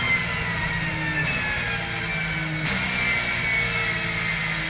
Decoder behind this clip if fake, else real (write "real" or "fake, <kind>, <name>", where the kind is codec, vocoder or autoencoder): real